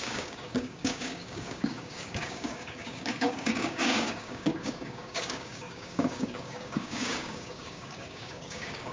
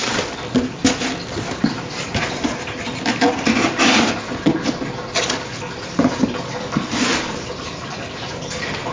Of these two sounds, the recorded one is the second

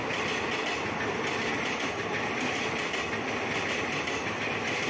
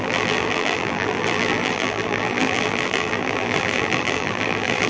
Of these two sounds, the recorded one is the first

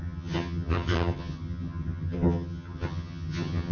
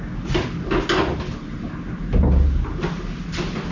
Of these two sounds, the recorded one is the second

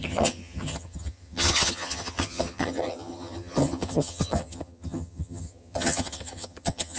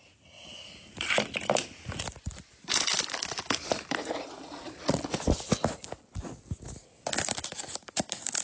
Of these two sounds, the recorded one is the second